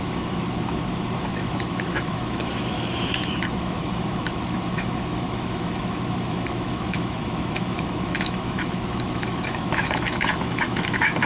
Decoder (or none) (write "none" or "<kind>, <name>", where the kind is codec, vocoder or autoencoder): autoencoder, DAC-VAE